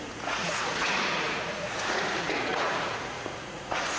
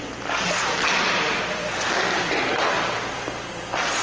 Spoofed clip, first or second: first